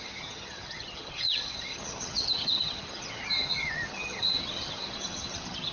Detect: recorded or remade remade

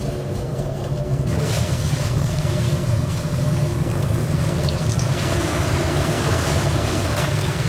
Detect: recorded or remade remade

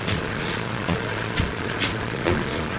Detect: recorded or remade remade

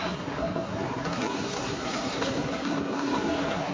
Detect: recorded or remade remade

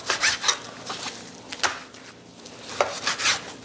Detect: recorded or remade recorded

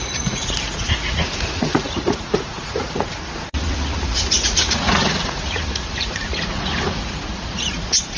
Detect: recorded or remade remade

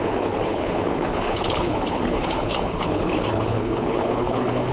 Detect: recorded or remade remade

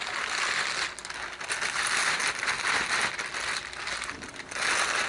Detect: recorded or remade recorded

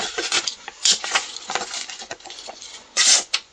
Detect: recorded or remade remade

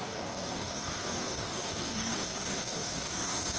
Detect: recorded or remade remade